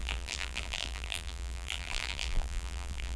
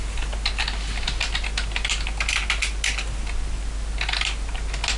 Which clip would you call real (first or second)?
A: second